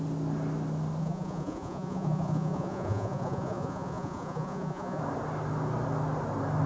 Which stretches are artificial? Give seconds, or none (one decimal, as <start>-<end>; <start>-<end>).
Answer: 1.0-5.0